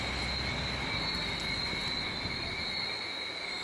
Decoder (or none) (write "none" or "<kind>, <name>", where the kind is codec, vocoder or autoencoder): none